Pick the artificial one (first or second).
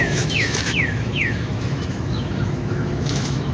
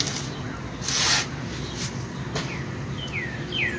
first